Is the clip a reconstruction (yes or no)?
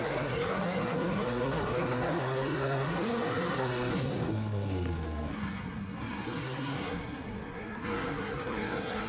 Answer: yes